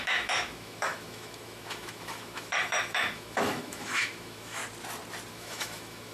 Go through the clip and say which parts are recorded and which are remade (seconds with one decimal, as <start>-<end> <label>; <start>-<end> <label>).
0.0-4.6 remade; 4.6-5.3 recorded; 5.3-6.1 remade